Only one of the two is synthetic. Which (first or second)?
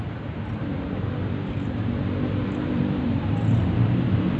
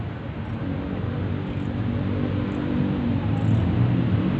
first